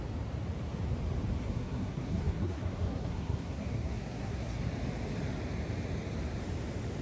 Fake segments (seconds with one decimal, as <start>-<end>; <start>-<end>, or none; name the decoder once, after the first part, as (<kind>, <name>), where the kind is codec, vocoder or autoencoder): 1.4-4.7 (codec, SNAC)